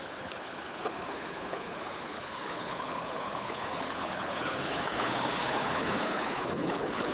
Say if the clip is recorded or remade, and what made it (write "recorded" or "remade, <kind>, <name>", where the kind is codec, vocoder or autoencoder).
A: remade, codec, HILCodec